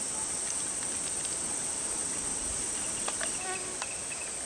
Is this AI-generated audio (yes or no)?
no